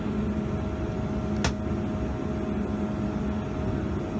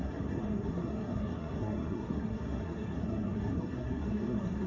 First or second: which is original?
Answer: first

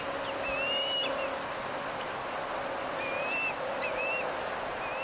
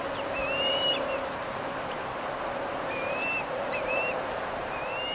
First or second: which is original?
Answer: first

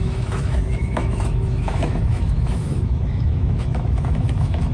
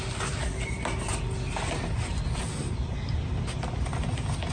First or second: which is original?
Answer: second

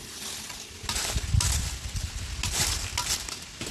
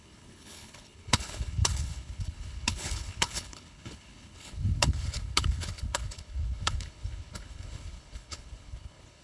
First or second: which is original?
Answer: first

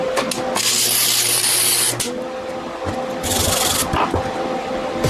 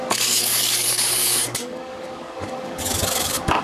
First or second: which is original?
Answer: first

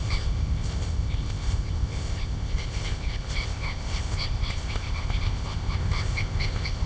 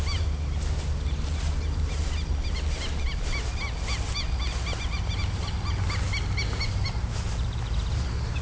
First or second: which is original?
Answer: second